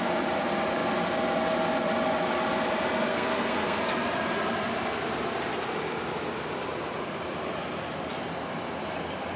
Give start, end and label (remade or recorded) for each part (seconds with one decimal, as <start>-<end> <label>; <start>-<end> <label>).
0.0-3.1 recorded; 3.1-3.8 remade; 3.8-9.4 recorded